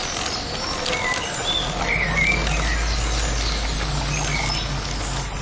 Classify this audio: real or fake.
real